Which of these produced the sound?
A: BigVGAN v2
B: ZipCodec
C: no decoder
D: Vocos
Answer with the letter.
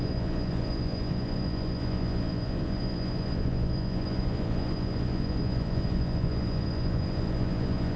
D